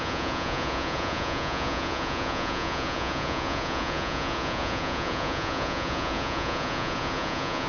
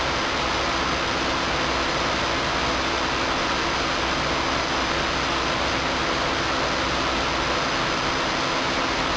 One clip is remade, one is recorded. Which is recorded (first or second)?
second